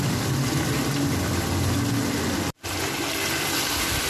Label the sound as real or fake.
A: real